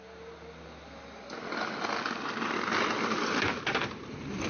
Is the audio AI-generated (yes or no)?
no